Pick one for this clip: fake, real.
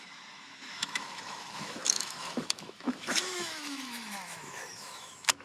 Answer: fake